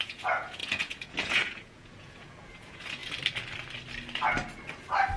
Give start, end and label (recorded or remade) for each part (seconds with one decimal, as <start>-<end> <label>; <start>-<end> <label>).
0.0-3.0 remade; 3.0-5.2 recorded